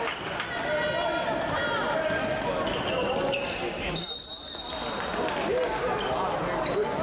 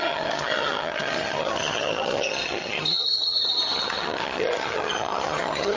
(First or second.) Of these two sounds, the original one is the first